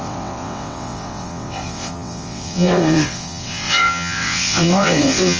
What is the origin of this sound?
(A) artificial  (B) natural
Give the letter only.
A